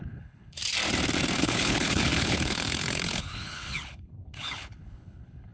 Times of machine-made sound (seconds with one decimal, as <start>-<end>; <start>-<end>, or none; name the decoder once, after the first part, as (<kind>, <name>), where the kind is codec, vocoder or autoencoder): 0.0-0.6 (codec, HILCodec); 1.4-5.5